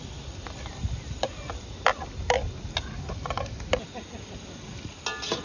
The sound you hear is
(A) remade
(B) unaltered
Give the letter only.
B